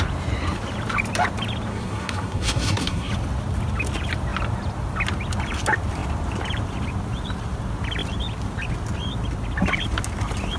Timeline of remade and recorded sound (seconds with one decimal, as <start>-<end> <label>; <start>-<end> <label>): 0.0-1.7 recorded; 1.7-3.1 remade; 3.1-10.6 recorded